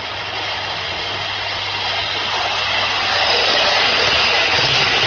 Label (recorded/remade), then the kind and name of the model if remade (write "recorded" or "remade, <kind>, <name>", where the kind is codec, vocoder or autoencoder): recorded